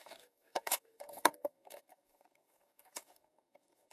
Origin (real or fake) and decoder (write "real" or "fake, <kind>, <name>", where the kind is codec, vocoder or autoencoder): fake, codec, DAC